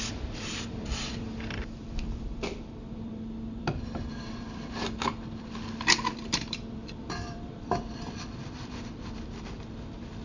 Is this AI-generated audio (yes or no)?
yes